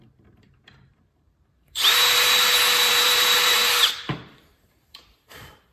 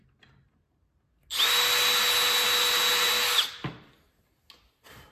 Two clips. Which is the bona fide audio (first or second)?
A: second